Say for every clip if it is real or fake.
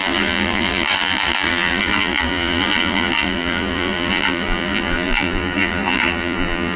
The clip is fake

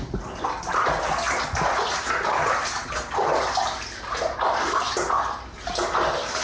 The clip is real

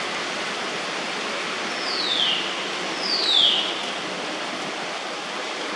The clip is real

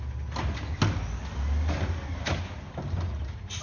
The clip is real